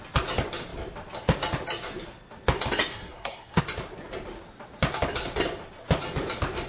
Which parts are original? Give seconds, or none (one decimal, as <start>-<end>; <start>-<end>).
0.0-2.9; 3.6-6.7